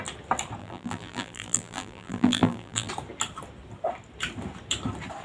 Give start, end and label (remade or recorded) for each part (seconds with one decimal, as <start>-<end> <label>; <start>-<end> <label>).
0.0-0.6 recorded; 0.6-2.9 remade; 2.9-5.2 recorded